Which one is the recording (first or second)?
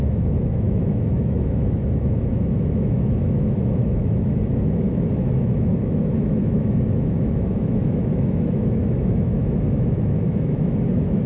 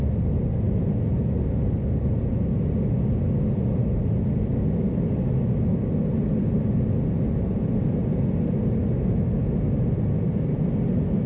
second